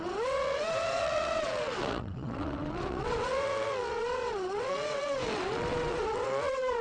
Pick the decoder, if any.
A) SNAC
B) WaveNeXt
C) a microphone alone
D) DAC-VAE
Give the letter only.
B